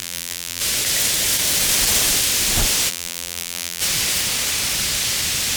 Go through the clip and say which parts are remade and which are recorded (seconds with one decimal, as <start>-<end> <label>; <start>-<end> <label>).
0.0-0.6 remade; 0.6-2.9 recorded; 2.9-3.8 remade; 3.8-5.6 recorded

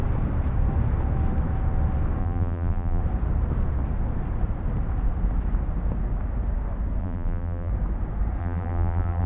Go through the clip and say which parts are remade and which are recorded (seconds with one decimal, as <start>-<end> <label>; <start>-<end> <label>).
0.0-2.2 recorded; 2.2-3.0 remade; 3.0-7.0 recorded; 7.0-7.7 remade; 7.7-8.4 recorded; 8.4-9.3 remade

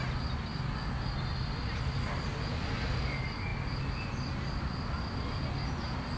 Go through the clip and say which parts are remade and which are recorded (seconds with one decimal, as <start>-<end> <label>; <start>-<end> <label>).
0.0-6.2 recorded

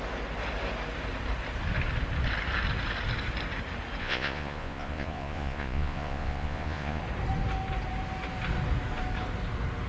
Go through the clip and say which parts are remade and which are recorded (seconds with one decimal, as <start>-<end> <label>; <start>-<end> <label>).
0.0-4.0 recorded; 4.0-7.0 remade; 7.0-9.9 recorded